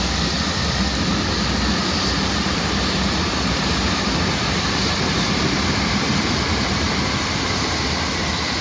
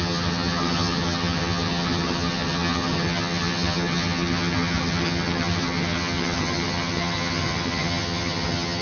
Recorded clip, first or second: first